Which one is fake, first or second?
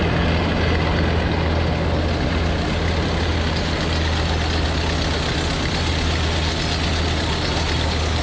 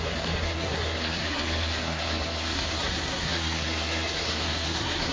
second